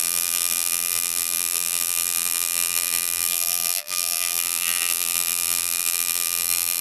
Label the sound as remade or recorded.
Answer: remade